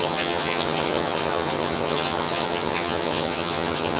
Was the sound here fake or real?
fake